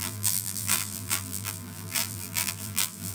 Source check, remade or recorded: remade